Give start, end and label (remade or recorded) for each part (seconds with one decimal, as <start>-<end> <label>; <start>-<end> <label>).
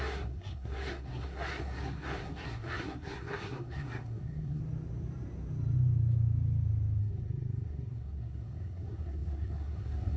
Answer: 0.0-4.6 remade; 4.6-7.0 recorded; 7.0-10.2 remade